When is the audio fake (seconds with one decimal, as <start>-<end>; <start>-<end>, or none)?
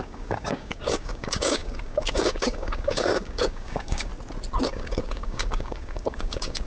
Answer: 0.0-4.1; 4.7-6.7